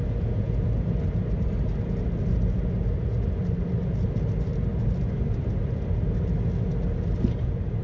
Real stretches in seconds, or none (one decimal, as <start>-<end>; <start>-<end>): 0.0-7.8